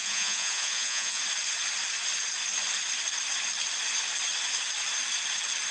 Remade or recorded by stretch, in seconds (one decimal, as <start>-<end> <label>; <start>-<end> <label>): 0.0-1.2 remade; 1.2-5.7 recorded